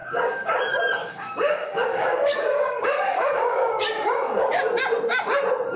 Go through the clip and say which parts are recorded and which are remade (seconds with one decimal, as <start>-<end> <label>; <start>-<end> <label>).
0.0-0.6 remade; 0.6-1.0 recorded; 1.0-4.5 remade; 4.5-5.8 recorded